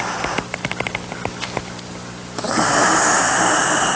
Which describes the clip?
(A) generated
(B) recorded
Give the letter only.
B